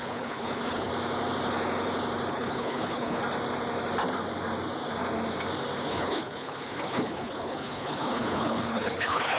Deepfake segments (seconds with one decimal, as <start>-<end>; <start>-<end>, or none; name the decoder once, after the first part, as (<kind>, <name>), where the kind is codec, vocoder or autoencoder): 0.0-0.9 (codec, HILCodec); 2.3-3.2; 5.9-9.4